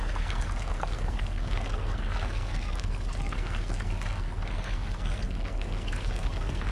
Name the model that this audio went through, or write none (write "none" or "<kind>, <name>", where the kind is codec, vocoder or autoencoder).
codec, SNAC